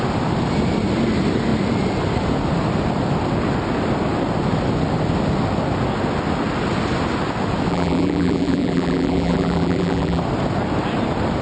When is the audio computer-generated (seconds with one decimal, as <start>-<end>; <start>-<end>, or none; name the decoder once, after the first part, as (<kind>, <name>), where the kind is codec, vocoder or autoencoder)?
7.7-10.2 (vocoder, BigVGAN v2)